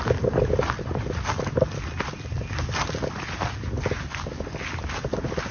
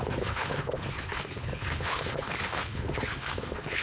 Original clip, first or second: first